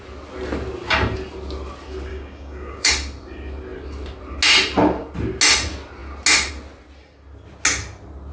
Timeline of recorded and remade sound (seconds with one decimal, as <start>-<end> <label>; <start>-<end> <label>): 0.0-2.1 recorded; 2.1-2.9 remade; 2.9-8.3 recorded